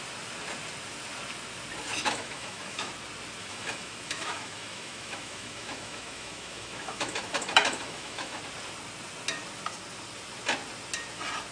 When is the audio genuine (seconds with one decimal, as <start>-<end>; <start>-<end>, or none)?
0.0-1.9; 2.9-3.4; 8.4-11.5